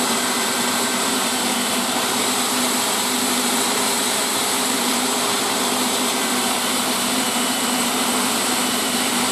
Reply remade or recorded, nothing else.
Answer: remade